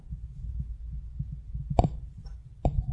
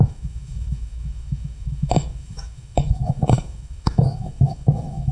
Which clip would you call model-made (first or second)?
second